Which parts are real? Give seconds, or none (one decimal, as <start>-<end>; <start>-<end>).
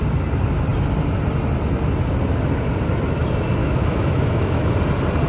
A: 0.0-3.6; 4.7-5.3